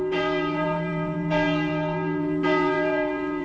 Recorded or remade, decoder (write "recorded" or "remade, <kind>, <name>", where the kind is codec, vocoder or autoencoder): remade, vocoder, BigVGAN v2